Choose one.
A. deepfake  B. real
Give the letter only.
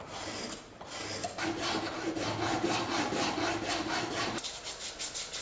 B